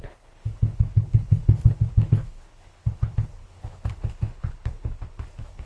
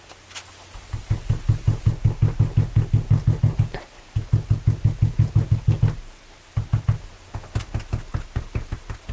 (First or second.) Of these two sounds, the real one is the second